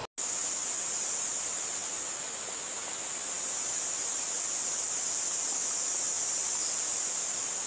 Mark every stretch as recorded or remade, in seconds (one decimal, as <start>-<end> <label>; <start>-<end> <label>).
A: 0.0-7.7 recorded